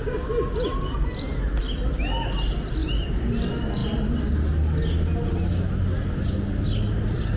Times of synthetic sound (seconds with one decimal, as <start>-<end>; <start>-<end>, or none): 2.8-3.3